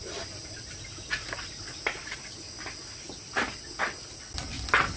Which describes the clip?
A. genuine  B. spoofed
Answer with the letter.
A